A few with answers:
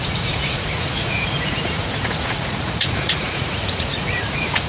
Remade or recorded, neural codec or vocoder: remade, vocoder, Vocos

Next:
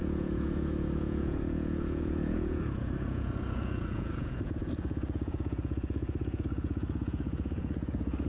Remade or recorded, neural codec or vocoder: remade, vocoder, Vocos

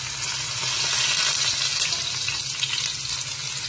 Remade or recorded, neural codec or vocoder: recorded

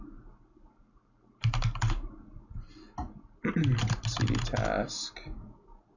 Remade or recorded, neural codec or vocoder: recorded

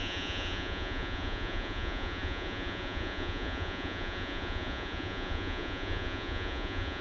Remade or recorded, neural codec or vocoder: remade, vocoder, Vocos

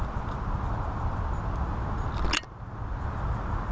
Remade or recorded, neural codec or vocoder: recorded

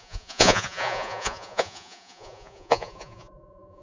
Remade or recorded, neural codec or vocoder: remade, vocoder, Vocos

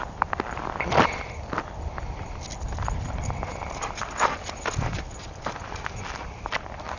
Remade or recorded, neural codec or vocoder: recorded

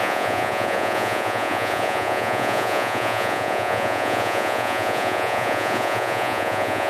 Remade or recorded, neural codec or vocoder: remade, vocoder, Vocos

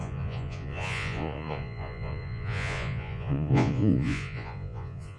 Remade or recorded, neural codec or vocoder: remade, vocoder, Vocos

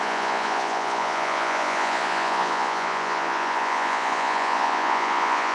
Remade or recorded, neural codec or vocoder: remade, vocoder, Vocos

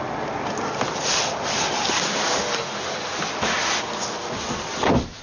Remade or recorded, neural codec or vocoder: recorded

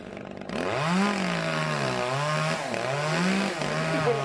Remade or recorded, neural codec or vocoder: recorded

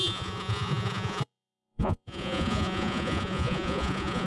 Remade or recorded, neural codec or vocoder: remade, vocoder, Vocos